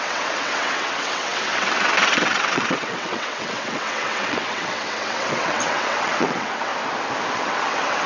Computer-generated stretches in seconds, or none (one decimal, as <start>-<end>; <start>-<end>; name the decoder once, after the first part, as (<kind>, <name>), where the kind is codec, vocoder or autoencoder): 0.0-6.7 (vocoder, WaveNeXt); 7.3-8.1